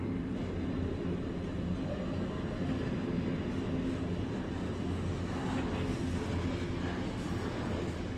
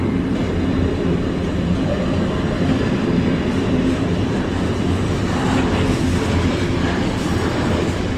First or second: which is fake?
second